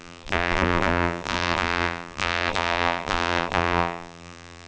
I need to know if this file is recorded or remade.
remade